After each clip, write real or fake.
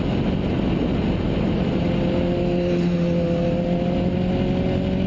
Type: real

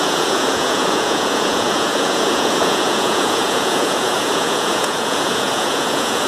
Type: fake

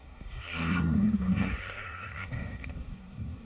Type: fake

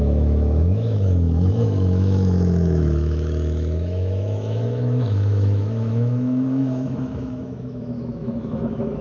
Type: fake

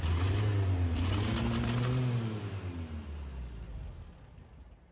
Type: real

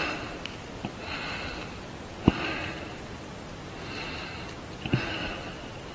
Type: real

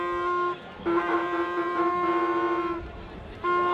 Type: real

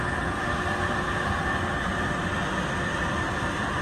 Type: real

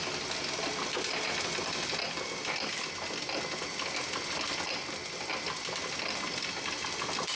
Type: real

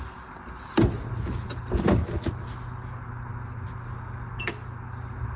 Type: real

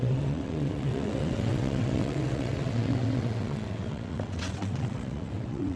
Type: fake